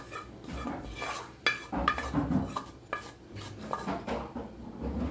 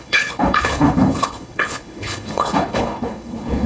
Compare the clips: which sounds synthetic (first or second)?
second